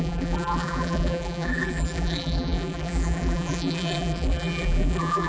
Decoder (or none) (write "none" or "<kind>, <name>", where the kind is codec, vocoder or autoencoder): vocoder, BigVGAN v2